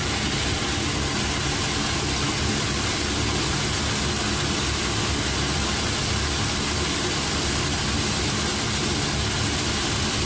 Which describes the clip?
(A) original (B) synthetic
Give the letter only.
A